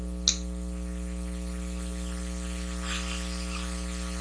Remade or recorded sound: recorded